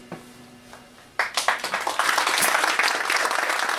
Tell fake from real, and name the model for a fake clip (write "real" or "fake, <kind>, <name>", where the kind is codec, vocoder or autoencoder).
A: real